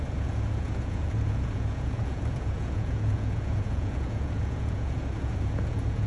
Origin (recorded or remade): remade